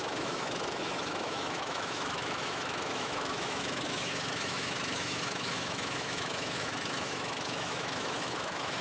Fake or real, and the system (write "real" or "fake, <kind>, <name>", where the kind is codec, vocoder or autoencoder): fake, autoencoder, DAC-VAE